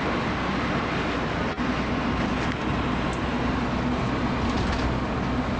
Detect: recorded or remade recorded